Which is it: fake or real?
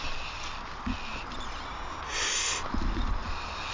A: real